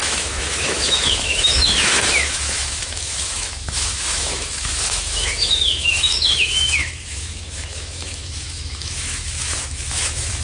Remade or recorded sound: remade